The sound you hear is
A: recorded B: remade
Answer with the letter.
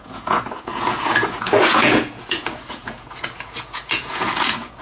B